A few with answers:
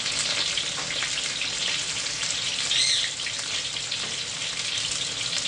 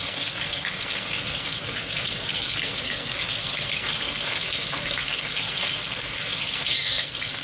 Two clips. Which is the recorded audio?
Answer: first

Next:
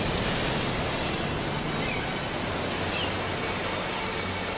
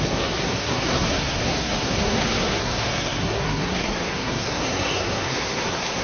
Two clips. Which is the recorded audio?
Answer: first